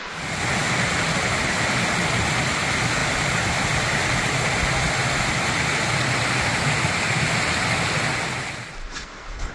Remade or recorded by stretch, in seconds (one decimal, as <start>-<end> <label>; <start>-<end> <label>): 0.0-8.8 recorded; 8.8-9.5 remade